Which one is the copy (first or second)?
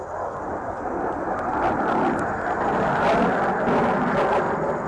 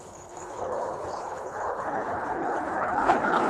second